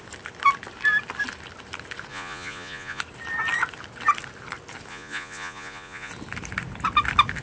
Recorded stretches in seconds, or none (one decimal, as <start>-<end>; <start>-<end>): 0.0-2.1; 3.0-4.9; 6.1-7.4